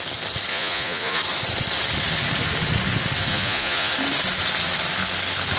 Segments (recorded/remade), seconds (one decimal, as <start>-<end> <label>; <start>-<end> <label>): 0.0-0.5 recorded; 0.5-1.2 remade; 1.2-3.3 recorded; 3.3-3.9 remade; 3.9-5.6 recorded